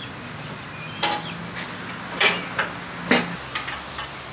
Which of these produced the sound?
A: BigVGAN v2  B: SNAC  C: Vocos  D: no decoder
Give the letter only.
D